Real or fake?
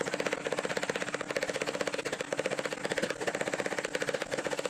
real